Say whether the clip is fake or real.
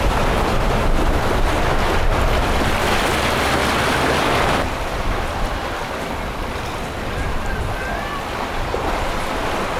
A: real